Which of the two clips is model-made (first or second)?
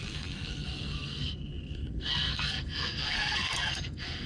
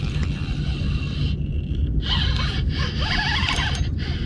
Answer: first